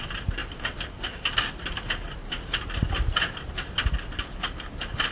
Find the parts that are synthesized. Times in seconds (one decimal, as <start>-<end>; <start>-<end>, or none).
0.4-1.5; 2.2-3.7